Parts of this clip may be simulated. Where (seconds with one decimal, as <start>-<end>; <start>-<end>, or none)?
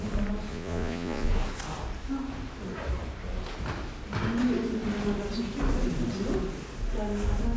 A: 0.5-1.3